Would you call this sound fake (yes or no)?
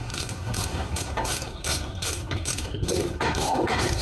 yes